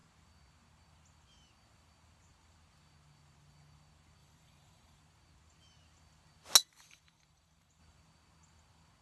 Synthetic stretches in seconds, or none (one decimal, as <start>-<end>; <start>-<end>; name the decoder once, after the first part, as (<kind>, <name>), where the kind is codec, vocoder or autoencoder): 4.2-5.0 (vocoder, BigVGAN v2); 6.6-7.8